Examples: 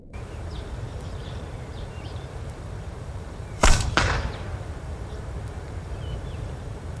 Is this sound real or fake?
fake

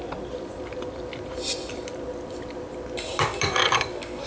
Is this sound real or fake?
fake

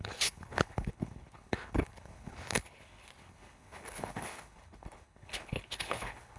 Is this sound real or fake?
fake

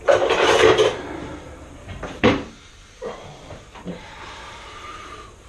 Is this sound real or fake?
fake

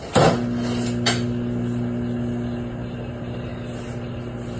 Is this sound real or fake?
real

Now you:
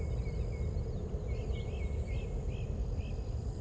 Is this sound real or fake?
real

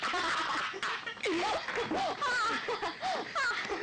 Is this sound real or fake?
real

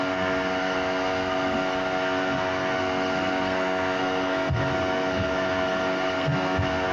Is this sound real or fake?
fake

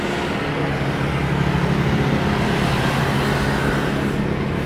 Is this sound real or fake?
real